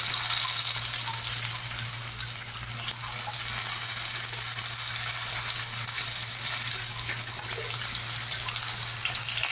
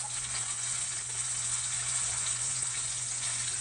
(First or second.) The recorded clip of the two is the first